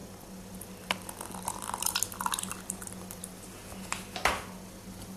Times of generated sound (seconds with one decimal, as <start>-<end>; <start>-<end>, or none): none